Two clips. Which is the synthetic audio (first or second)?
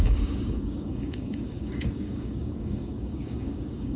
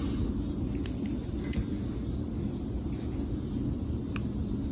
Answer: first